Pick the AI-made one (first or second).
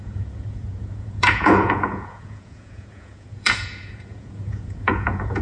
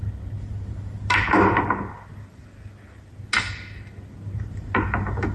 first